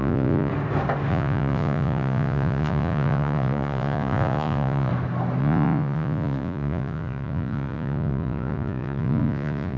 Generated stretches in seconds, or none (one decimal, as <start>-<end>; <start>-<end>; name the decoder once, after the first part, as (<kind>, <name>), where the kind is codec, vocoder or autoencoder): 0.0-0.5 (vocoder, Vocos); 1.1-4.9; 5.4-9.8